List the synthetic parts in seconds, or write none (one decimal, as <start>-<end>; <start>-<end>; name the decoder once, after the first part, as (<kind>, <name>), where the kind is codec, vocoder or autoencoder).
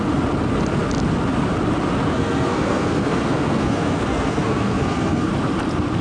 2.1-5.3 (codec, SNAC)